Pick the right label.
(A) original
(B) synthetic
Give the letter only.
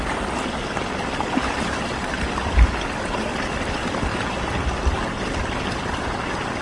A